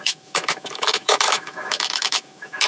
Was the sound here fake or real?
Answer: fake